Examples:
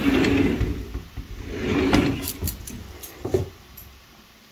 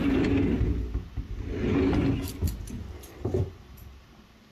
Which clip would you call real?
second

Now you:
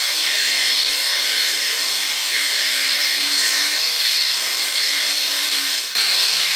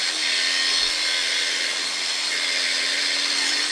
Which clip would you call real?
second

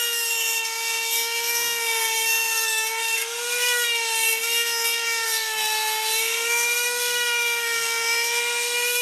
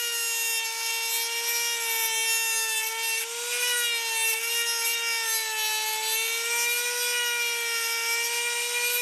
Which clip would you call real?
second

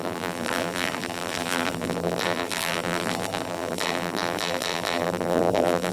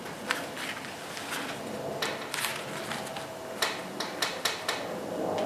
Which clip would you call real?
second